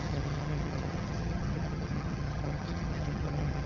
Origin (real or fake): fake